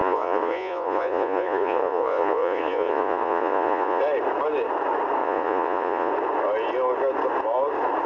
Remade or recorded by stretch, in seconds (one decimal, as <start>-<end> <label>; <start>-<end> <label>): 0.0-4.0 remade; 4.0-5.2 recorded; 5.2-6.1 remade; 6.1-8.1 recorded